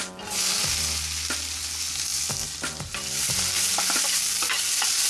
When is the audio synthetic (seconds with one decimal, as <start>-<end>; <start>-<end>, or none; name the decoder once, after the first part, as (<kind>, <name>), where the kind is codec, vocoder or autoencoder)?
none

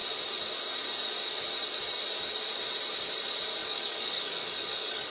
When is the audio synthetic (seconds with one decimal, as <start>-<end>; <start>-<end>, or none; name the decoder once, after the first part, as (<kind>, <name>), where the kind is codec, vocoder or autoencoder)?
3.6-5.1 (codec, DAC)

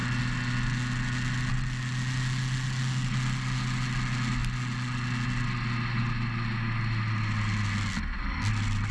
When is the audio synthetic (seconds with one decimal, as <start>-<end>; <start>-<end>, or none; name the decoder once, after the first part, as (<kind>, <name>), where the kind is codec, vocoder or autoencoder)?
none

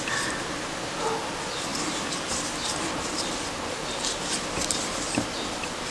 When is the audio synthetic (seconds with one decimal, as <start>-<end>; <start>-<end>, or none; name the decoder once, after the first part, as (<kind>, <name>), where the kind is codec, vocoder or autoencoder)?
none

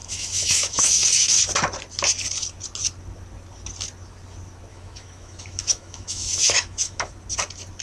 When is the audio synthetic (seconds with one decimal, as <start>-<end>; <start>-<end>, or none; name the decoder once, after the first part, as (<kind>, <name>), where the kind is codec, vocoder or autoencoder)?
0.0-1.4 (autoencoder, DAC-VAE); 4.7-7.1

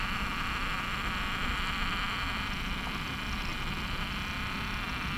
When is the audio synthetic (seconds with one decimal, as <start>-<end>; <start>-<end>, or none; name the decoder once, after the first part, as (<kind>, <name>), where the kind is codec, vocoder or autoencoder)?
none